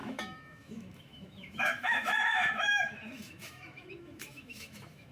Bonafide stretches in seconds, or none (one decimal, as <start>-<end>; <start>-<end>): none